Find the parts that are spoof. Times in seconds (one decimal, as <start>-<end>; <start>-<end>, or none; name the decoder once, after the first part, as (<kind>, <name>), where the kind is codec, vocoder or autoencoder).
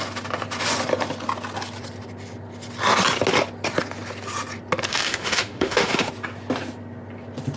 4.9-6.1 (autoencoder, DAC-VAE)